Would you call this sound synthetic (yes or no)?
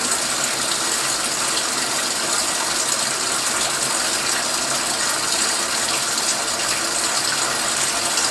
no